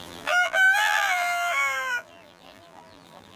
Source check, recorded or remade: remade